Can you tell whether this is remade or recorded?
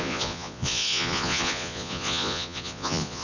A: remade